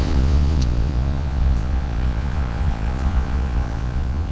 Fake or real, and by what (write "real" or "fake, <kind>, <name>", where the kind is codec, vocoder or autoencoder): fake, vocoder, Vocos